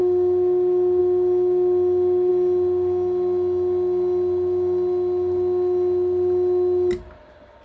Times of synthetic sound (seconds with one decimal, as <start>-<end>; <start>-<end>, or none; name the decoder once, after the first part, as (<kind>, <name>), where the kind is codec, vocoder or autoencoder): none